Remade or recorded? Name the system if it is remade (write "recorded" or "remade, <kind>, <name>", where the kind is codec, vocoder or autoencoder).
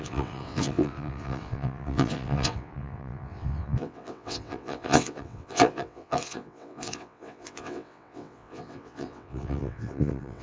remade, vocoder, WaveNeXt